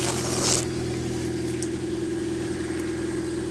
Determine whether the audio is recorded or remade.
recorded